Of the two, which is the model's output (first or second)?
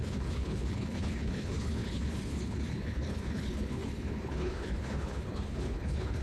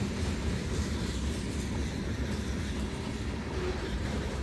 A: first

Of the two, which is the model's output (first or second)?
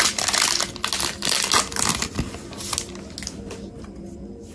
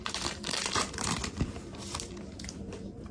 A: second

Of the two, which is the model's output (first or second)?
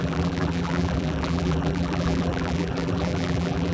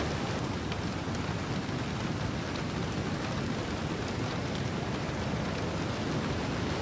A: first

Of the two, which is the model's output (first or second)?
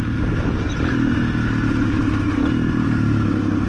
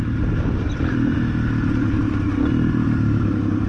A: second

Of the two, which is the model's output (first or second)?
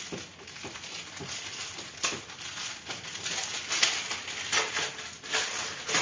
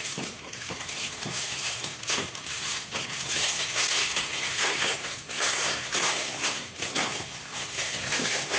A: second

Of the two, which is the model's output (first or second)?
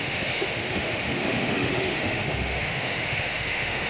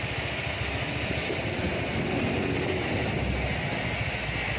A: first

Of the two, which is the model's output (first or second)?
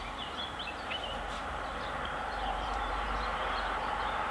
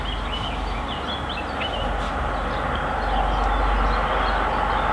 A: first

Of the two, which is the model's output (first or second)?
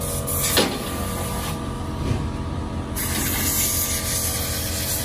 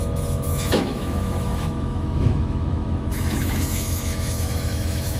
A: second